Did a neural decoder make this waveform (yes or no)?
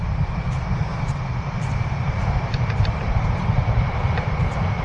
yes